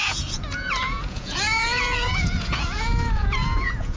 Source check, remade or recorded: remade